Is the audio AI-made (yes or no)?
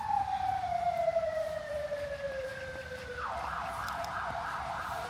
yes